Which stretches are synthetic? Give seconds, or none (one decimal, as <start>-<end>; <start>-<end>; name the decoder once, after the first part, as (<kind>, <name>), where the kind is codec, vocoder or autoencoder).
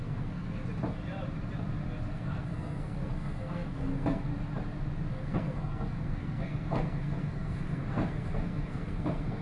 0.0-0.6 (codec, SNAC); 2.1-4.3; 5.1-9.4